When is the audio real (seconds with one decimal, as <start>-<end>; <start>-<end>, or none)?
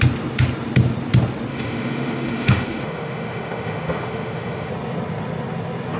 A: 0.0-1.5; 4.7-6.0